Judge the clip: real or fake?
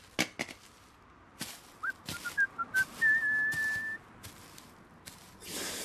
real